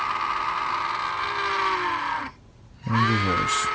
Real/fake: real